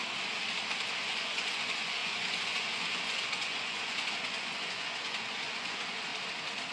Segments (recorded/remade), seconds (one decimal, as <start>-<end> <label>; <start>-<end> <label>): 0.0-1.0 recorded; 1.0-6.1 remade; 6.1-6.7 recorded